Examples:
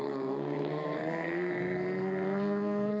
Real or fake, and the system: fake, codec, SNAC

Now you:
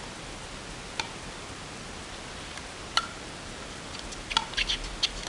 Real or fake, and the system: real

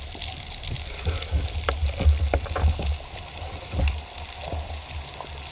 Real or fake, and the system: real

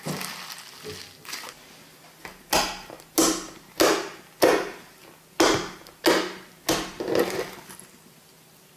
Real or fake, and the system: real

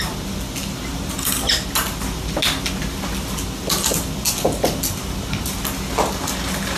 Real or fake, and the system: real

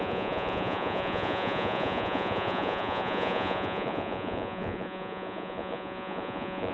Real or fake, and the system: fake, vocoder, Vocos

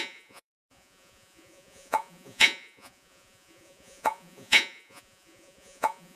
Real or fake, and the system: fake, vocoder, Vocos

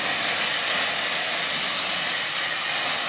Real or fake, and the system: real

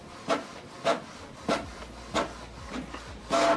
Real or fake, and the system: real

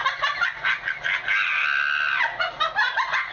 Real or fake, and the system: real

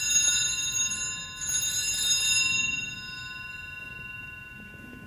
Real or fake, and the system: real